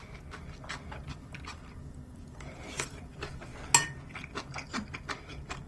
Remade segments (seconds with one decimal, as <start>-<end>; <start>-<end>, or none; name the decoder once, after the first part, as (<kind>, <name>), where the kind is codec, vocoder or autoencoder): 0.0-3.5 (vocoder, BigVGAN v2); 4.1-5.7